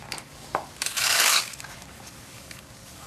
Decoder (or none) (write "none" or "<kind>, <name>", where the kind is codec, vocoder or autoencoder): codec, DAC